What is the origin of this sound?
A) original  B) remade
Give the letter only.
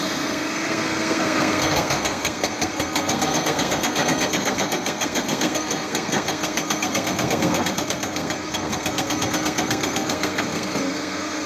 B